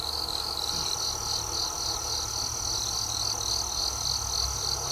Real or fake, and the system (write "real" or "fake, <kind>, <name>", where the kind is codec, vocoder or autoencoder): real